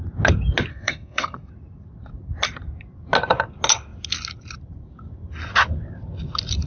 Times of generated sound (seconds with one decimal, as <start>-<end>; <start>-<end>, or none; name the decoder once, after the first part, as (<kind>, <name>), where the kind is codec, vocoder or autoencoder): 0.7-1.5 (codec, SNAC)